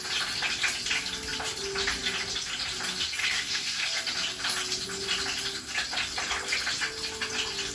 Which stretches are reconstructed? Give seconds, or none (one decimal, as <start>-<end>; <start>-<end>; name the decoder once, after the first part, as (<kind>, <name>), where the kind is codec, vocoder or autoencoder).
3.2-3.8 (codec, SNAC)